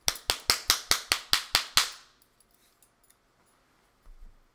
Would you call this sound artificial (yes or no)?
no